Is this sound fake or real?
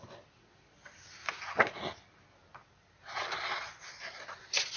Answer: real